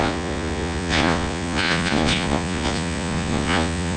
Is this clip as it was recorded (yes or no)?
no